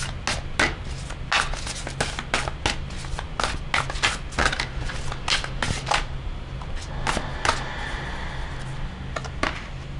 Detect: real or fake real